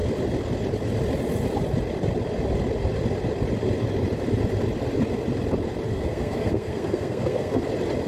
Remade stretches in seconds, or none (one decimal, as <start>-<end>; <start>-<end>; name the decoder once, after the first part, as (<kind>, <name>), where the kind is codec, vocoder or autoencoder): 5.9-7.6 (codec, SNAC)

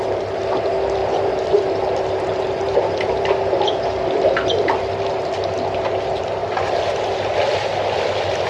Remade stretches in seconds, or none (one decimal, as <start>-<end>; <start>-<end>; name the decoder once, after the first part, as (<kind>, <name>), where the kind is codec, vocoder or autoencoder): none

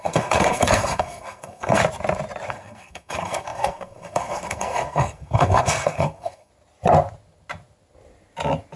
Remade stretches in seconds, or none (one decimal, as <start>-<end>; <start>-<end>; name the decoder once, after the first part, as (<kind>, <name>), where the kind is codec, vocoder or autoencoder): 0.0-1.8 (codec, SNAC); 2.5-6.5

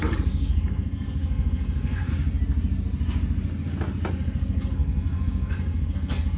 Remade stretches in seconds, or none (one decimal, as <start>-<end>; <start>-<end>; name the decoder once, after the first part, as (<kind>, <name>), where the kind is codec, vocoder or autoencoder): 0.0-2.1 (codec, SNAC); 4.1-6.4